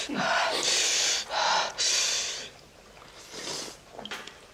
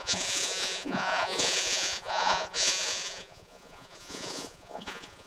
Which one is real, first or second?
first